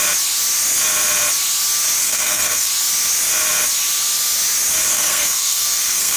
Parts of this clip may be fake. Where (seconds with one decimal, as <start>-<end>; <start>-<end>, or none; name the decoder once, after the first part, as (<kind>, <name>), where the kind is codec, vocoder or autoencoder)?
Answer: 2.0-2.7 (codec, SNAC); 4.9-6.2